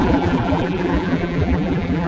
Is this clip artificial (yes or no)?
yes